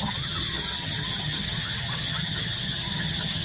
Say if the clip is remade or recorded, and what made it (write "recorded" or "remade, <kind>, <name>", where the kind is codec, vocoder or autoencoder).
remade, vocoder, HiFi-GAN